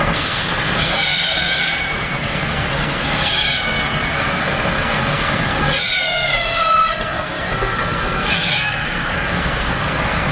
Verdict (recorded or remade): remade